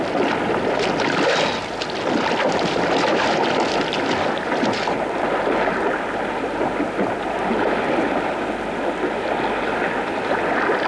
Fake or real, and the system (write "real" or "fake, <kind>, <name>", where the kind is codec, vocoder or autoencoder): real